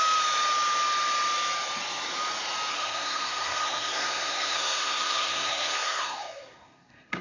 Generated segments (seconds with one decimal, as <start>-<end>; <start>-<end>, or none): 2.7-7.2